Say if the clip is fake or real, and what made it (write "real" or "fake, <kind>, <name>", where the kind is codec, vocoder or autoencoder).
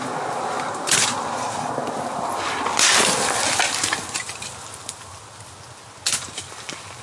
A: real